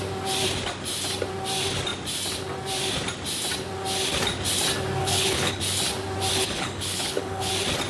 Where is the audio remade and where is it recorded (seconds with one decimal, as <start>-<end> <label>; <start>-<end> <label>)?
0.0-5.0 recorded; 5.0-5.6 remade; 5.6-6.3 recorded; 6.3-7.5 remade; 7.5-7.9 recorded